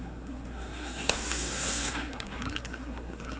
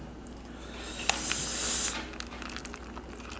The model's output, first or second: first